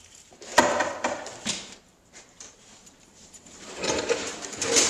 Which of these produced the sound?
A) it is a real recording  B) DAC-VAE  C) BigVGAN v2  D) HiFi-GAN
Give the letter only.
C